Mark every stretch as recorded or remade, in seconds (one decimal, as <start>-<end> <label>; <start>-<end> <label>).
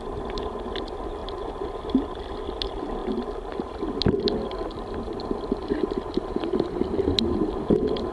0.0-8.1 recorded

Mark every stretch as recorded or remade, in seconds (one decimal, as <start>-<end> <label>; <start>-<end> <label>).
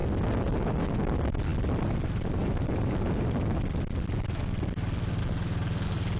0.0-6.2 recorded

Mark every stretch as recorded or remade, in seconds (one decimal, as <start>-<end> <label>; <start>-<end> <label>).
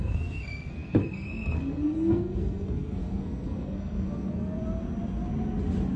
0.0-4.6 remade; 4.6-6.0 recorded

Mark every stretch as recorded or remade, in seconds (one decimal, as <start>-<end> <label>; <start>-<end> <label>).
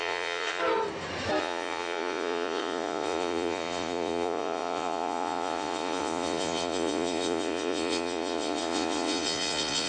0.0-0.6 remade; 0.6-1.4 recorded; 1.4-9.9 remade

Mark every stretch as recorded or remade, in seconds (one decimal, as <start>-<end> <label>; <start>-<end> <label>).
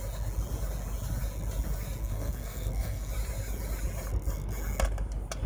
0.0-2.0 recorded; 2.0-3.1 remade; 3.1-5.5 recorded